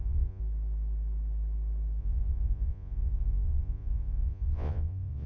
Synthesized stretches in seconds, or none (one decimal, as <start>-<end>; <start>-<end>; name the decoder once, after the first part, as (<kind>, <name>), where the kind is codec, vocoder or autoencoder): 0.0-0.4 (vocoder, Vocos); 2.0-5.3